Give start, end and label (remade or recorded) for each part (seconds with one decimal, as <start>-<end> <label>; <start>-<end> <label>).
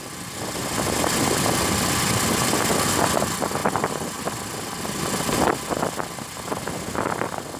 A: 0.0-3.6 recorded; 3.6-4.3 remade; 4.3-7.6 recorded